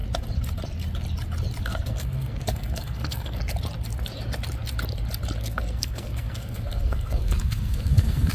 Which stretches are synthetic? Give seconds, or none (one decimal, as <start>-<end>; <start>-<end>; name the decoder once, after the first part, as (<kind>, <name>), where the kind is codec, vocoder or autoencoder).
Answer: 1.6-3.4 (codec, SNAC); 5.4-8.3

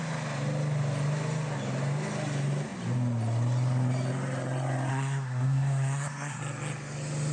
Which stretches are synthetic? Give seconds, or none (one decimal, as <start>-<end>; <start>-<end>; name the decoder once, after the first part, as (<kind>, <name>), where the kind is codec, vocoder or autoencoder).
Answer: 4.9-6.4 (codec, SNAC)

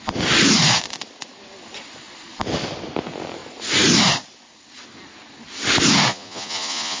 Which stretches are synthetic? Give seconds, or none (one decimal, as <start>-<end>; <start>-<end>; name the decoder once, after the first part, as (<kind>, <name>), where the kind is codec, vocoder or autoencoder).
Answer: 6.1-7.0 (vocoder, Vocos)

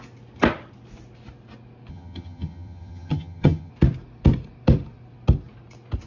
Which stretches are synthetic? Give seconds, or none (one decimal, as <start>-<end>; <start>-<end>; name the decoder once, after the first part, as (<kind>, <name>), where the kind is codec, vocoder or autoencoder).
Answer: 1.9-3.7 (vocoder, HiFi-GAN)

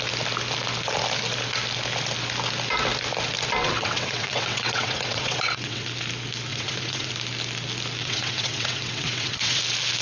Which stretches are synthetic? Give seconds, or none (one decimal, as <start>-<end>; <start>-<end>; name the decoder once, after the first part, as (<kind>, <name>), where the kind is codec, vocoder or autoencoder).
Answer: 3.6-5.9 (vocoder, WaveNeXt); 6.5-7.1; 8.0-9.6

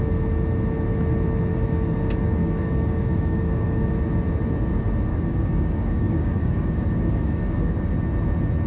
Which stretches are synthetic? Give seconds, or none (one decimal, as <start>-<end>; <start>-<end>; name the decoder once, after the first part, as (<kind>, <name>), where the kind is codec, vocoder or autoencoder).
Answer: 1.5-2.0 (codec, DAC); 2.4-3.9; 5.1-7.9

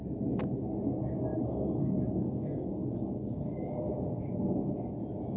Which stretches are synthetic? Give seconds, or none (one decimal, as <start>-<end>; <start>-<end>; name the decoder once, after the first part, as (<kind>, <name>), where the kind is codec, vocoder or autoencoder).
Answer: 1.3-3.9 (codec, DAC)